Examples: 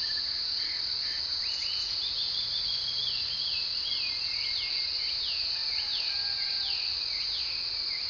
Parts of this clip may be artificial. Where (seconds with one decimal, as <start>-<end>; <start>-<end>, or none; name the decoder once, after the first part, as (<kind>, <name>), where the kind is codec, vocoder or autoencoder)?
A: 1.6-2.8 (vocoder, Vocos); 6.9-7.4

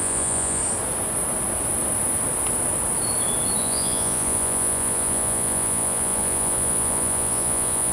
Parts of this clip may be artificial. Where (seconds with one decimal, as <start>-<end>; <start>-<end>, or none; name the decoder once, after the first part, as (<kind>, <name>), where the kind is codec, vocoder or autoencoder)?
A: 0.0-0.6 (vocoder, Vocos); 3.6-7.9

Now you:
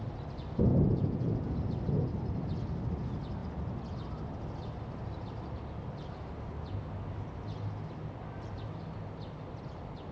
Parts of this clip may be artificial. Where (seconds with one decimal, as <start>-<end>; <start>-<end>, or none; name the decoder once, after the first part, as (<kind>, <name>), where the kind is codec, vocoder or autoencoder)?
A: 0.7-1.7 (vocoder, Vocos)

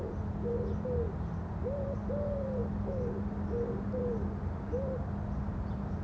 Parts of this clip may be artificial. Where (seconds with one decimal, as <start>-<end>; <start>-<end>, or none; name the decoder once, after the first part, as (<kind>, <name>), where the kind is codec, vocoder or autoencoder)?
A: none

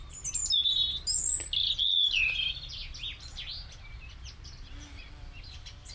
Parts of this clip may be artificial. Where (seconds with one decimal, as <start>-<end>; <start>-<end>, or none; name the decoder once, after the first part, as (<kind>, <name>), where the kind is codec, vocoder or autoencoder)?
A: none

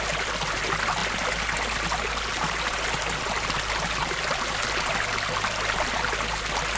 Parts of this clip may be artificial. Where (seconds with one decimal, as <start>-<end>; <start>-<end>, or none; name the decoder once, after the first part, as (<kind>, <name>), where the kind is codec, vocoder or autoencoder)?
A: none

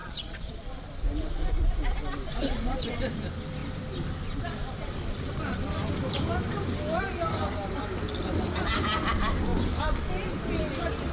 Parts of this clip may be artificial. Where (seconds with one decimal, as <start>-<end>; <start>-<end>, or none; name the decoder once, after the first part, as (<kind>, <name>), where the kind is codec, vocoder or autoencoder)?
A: 0.0-0.6 (vocoder, Vocos)

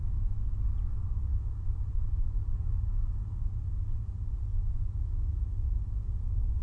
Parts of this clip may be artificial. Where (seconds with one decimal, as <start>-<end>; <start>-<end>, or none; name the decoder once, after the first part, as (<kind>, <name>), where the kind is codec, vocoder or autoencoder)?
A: 1.3-5.3 (vocoder, Vocos)